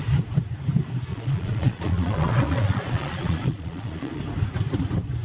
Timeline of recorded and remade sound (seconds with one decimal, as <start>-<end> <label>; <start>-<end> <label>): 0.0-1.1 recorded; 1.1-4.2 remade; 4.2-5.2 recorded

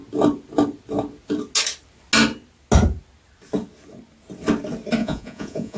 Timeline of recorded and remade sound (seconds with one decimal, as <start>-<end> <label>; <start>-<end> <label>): 0.0-5.0 recorded; 5.0-5.8 remade

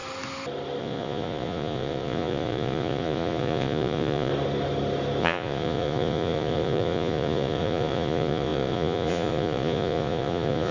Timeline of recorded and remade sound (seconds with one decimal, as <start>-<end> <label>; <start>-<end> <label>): 0.0-0.8 recorded; 0.8-4.3 remade; 4.3-5.2 recorded; 5.2-10.7 remade